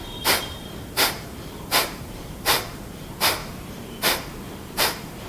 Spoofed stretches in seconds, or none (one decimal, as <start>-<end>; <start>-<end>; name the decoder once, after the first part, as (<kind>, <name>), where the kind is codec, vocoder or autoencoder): 0.0-5.3 (vocoder, BigVGAN v2)